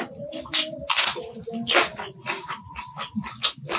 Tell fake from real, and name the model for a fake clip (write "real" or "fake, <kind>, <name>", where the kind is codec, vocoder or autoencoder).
real